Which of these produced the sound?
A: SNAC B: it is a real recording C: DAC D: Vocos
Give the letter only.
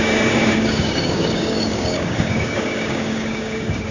C